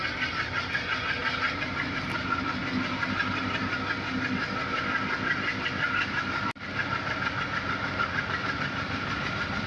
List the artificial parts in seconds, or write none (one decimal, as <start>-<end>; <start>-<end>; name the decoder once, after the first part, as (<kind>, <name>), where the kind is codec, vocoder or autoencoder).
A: none